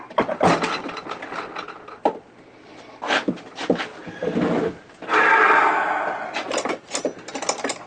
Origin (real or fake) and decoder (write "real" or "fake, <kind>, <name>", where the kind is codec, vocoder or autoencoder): real